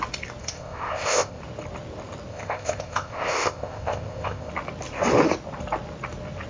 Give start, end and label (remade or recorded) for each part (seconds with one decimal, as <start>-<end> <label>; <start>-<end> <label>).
0.0-0.4 recorded; 0.4-1.4 remade; 1.4-2.3 recorded; 2.3-4.5 remade; 4.5-6.5 recorded